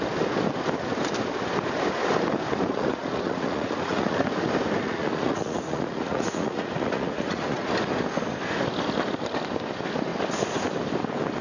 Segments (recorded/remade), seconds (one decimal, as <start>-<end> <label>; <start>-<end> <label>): 0.0-2.7 recorded; 2.7-4.2 remade; 4.2-4.8 recorded; 4.8-7.7 remade; 7.7-11.4 recorded